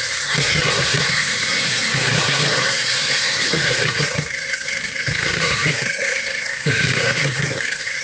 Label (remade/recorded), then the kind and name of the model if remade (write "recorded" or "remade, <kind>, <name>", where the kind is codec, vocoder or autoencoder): remade, codec, SNAC